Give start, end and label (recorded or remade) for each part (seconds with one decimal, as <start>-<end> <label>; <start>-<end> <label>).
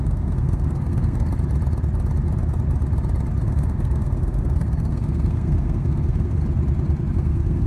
0.0-1.3 remade; 1.3-3.4 recorded; 3.4-6.4 remade; 6.4-7.1 recorded; 7.1-7.7 remade